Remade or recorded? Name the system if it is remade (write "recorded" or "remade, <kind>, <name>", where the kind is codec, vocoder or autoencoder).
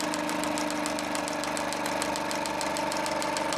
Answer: recorded